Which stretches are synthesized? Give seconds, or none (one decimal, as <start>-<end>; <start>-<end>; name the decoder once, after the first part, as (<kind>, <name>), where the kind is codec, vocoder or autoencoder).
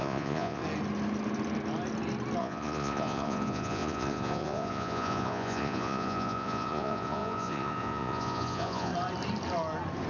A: 0.0-0.6 (vocoder, Vocos); 2.4-8.9